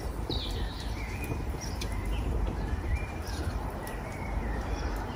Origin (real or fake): fake